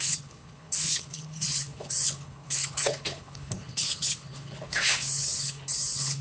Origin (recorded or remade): remade